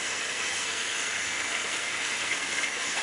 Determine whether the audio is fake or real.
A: fake